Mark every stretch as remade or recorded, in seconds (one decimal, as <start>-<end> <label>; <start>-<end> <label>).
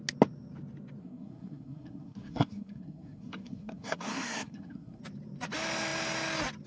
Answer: 0.0-1.0 recorded; 1.0-5.0 remade; 5.0-6.7 recorded